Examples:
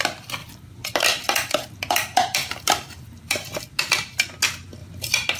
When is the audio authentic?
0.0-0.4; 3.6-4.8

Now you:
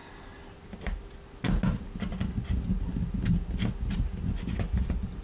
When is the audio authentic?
0.0-5.2

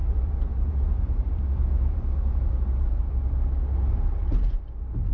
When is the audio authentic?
3.1-4.2

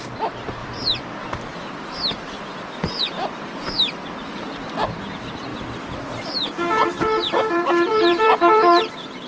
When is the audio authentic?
0.6-1.8; 5.5-7.5